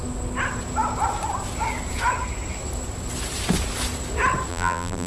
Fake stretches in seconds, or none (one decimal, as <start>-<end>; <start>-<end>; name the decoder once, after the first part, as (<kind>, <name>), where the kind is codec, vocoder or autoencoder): 4.5-5.1 (vocoder, BigVGAN v2)